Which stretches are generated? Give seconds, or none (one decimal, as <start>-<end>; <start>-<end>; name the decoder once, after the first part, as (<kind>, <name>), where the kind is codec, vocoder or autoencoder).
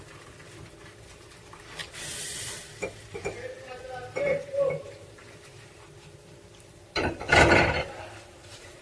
0.0-1.8 (vocoder, BigVGAN v2); 3.0-8.8